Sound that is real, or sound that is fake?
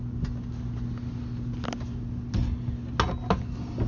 real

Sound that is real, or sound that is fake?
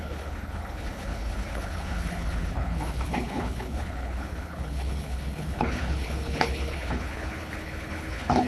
fake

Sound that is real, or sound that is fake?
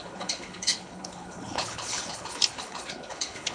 fake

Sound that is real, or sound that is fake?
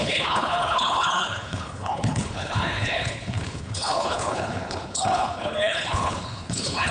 fake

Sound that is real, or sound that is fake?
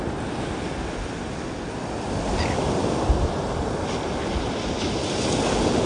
real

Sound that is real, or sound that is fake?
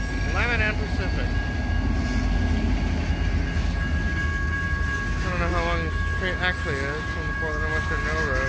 real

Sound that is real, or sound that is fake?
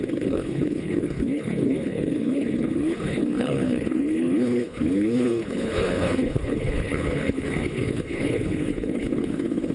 fake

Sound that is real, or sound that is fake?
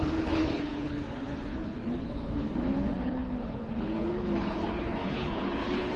fake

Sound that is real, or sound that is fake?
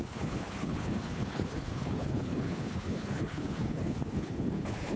fake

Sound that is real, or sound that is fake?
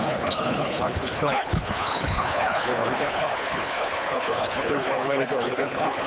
fake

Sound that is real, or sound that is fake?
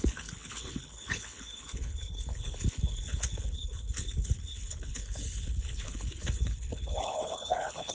fake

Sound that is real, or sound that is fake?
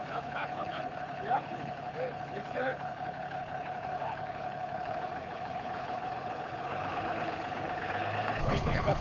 fake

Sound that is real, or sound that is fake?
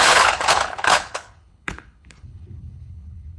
fake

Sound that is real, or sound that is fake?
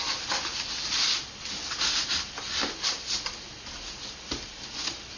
real